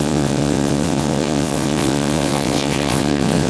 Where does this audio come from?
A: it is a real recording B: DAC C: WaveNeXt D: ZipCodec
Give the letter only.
C